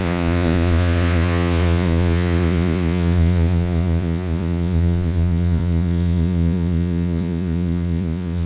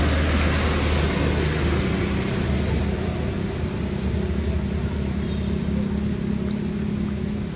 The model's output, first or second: first